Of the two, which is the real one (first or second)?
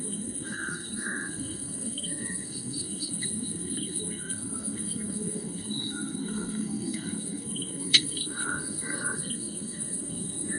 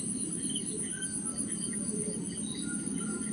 second